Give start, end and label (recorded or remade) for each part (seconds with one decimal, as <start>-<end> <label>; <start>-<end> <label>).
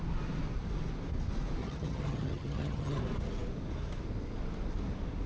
0.0-1.6 recorded; 1.6-3.0 remade; 3.0-5.3 recorded